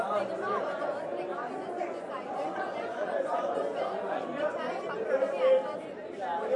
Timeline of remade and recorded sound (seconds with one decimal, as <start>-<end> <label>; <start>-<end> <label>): 0.0-1.4 recorded; 1.4-4.9 remade; 4.9-6.6 recorded